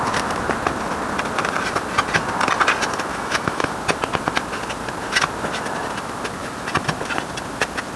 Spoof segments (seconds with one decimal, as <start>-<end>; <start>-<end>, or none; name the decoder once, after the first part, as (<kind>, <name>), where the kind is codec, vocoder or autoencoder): 3.1-3.7 (autoencoder, DAC-VAE)